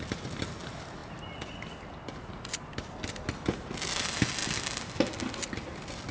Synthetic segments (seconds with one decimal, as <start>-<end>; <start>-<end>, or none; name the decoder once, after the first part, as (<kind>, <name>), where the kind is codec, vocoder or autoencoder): none